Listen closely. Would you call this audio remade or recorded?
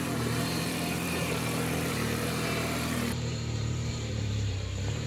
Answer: remade